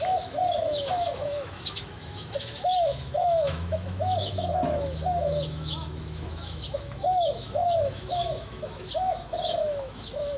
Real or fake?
fake